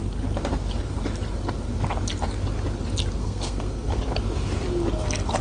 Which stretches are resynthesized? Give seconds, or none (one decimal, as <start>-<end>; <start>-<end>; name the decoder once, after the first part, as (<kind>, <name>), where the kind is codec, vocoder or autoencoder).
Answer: 3.2-4.0 (codec, SNAC)